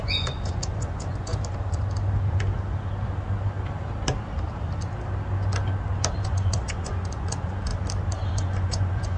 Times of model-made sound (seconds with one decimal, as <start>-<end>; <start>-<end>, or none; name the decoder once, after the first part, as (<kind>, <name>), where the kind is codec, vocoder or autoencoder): 0.0-1.3 (vocoder, Vocos); 6.2-7.7; 8.3-9.2